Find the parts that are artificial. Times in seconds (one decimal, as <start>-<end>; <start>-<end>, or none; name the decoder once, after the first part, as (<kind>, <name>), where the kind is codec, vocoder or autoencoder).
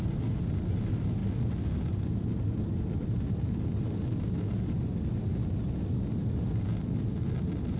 none